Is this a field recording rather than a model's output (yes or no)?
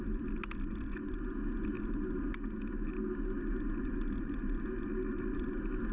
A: yes